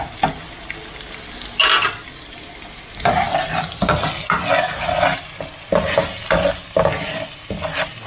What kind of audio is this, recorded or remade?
recorded